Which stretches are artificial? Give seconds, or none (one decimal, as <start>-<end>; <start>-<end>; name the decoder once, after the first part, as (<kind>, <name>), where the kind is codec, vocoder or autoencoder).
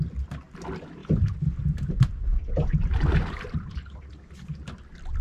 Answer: 1.0-4.1 (vocoder, BigVGAN v2)